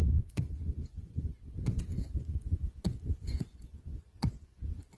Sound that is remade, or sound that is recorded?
remade